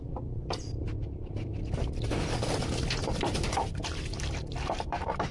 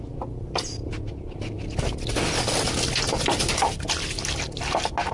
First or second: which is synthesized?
first